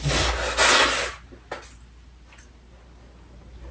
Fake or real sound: real